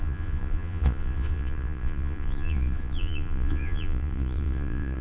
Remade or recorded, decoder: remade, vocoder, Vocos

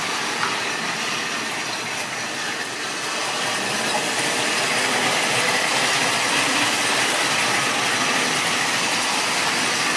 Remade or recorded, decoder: recorded